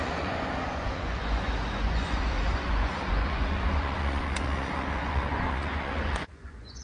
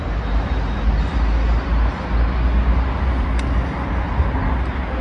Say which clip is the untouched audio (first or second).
second